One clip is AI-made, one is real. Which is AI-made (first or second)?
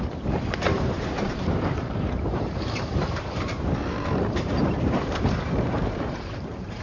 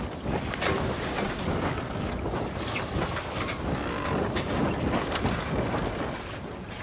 first